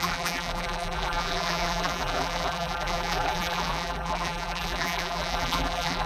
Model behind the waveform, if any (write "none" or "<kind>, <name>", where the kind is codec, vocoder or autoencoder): vocoder, BigVGAN v2